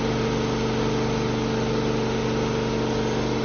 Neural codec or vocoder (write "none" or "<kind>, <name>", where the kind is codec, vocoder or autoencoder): none